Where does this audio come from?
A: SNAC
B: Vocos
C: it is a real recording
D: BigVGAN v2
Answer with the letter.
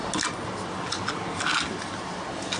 C